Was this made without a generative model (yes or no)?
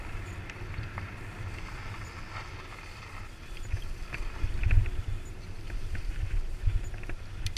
no